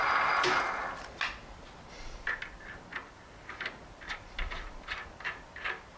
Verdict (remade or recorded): recorded